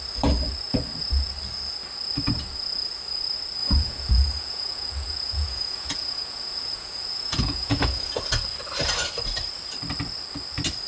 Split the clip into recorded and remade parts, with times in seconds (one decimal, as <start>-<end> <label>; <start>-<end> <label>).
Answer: 0.0-3.6 recorded; 3.6-8.2 remade; 8.2-10.9 recorded